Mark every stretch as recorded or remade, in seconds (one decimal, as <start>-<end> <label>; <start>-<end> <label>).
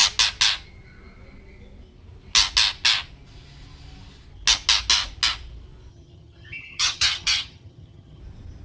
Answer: 0.0-5.9 recorded; 5.9-8.2 remade; 8.2-8.6 recorded